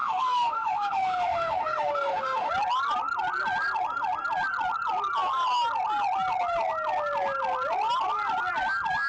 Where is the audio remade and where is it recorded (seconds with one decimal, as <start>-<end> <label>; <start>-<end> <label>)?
0.0-2.5 remade; 2.5-9.1 recorded